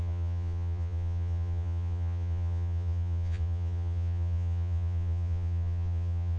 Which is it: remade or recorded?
remade